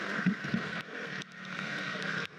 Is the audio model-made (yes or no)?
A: yes